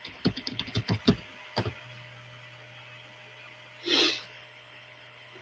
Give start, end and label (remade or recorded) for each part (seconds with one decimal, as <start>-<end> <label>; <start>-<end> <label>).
0.0-1.0 remade; 1.0-4.2 recorded; 4.2-5.4 remade